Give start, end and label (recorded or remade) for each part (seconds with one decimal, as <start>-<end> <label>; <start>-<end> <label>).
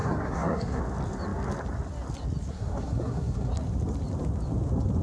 0.0-0.8 remade; 0.8-2.5 recorded; 2.5-3.5 remade; 3.5-5.0 recorded